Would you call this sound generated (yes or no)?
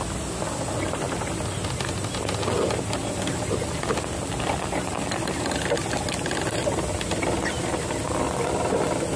no